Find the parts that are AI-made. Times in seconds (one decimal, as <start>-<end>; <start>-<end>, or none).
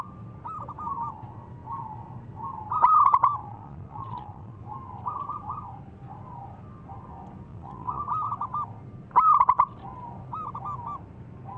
3.4-4.6; 7.5-8.0